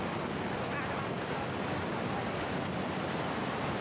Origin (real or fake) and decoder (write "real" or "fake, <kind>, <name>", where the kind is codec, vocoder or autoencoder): real